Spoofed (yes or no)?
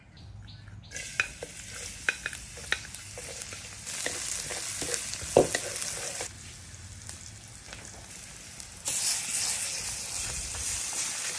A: no